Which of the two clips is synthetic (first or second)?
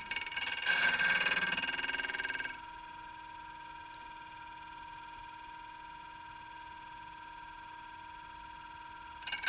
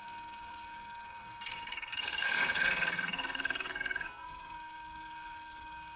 second